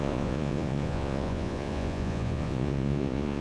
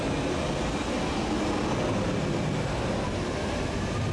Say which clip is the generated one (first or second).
first